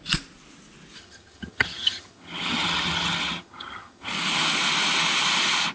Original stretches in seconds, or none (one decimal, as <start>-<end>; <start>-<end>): 0.0-1.0; 4.1-5.7